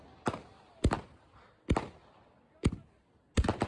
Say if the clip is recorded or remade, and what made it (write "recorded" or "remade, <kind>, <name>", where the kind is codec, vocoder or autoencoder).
recorded